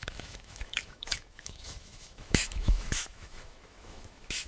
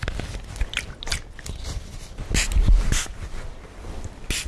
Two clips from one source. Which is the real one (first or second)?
second